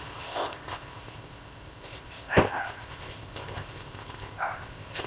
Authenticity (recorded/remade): remade